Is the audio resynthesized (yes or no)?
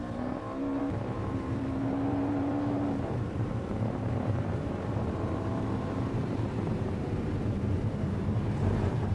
yes